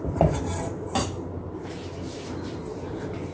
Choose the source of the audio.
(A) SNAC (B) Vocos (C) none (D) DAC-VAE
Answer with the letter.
C